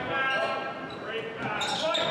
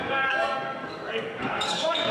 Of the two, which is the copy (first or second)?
second